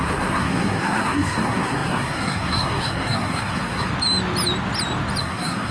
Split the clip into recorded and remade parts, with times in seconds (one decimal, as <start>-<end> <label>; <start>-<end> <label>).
0.0-3.9 remade; 3.9-5.2 recorded; 5.2-5.7 remade